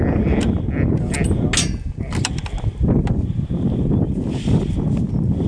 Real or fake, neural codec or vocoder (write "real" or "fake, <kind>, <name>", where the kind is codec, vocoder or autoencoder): real